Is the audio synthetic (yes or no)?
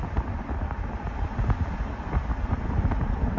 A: no